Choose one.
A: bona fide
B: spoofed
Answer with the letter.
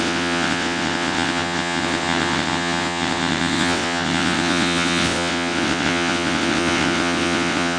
B